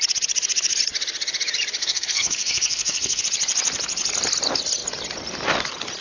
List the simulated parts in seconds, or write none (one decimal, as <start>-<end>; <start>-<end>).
1.8-3.2